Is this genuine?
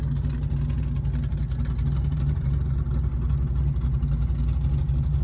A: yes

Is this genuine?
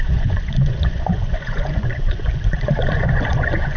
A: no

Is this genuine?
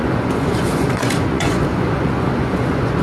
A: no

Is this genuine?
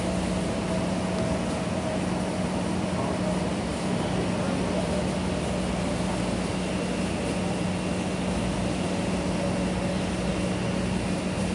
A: yes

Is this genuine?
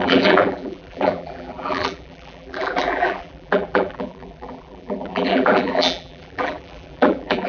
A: no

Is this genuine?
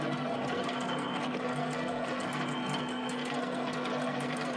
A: no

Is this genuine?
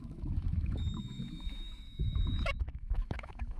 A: no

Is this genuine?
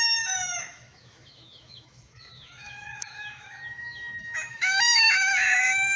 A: no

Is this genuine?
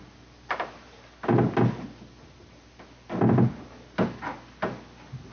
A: yes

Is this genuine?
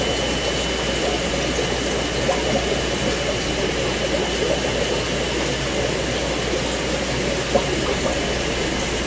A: yes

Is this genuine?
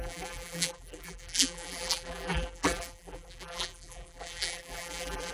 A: no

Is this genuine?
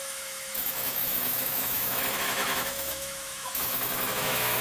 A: no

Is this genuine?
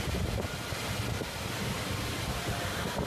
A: yes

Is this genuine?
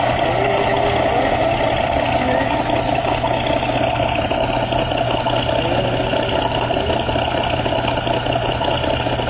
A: yes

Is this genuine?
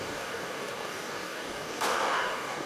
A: no